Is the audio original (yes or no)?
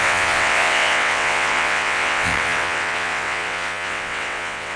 no